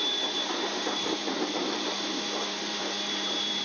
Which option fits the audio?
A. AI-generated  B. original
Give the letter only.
A